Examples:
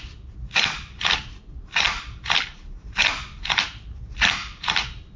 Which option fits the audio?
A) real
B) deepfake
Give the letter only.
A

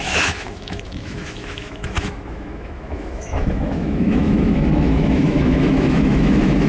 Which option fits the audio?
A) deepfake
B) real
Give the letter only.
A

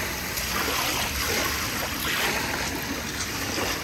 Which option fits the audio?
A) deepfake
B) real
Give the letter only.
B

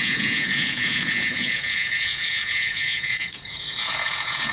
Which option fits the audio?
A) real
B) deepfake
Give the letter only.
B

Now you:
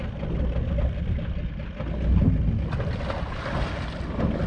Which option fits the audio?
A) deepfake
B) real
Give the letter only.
B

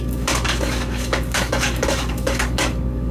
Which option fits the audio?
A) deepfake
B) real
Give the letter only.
A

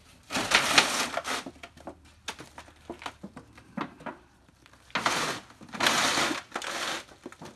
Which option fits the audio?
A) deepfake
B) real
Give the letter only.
B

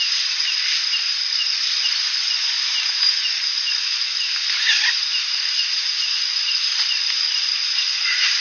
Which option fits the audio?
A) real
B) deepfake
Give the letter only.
A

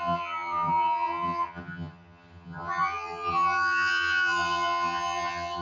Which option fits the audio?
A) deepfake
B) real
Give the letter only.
A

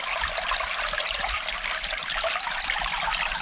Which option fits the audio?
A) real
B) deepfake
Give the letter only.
A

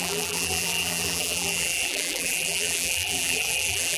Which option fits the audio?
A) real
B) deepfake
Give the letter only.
B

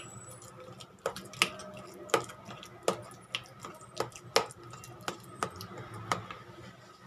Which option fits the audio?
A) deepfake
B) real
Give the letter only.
B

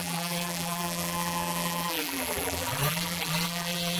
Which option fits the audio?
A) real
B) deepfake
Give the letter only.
B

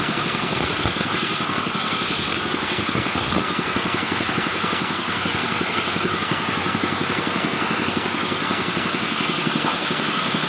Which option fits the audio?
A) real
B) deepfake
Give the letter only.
B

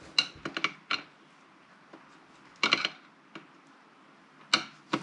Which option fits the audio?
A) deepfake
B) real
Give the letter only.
B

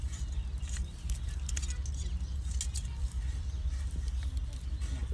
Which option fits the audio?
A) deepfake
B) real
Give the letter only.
B